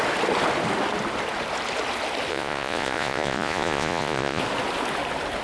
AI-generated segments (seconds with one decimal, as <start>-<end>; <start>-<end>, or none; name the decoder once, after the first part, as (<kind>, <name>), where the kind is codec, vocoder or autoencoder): 2.3-4.4 (vocoder, Vocos)